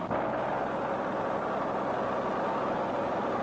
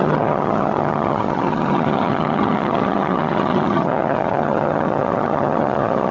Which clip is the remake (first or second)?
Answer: second